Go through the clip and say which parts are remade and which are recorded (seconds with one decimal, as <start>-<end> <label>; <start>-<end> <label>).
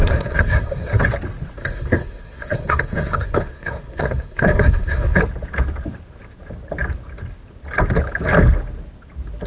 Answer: 0.0-1.0 remade; 1.0-1.6 recorded; 1.6-5.2 remade; 5.2-9.5 recorded